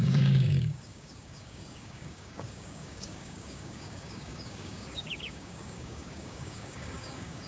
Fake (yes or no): yes